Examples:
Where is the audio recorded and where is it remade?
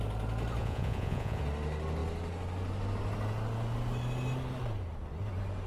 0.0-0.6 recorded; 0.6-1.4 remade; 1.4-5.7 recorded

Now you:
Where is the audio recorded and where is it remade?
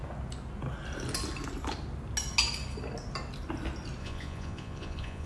0.0-4.0 recorded; 4.0-5.3 remade